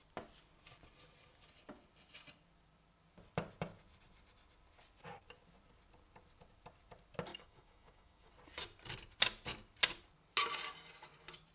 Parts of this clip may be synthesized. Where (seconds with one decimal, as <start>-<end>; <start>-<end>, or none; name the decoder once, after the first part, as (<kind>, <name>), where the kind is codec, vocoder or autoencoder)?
7.3-8.3 (codec, DAC)